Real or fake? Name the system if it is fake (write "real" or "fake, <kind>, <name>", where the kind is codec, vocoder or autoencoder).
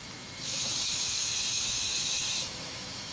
fake, autoencoder, DAC-VAE